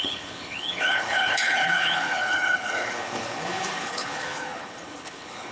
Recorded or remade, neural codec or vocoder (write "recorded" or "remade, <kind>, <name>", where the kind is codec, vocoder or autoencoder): remade, codec, HILCodec